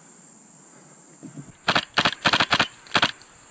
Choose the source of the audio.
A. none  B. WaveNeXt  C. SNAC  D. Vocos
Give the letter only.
A